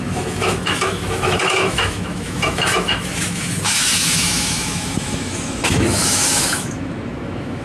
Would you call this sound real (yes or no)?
no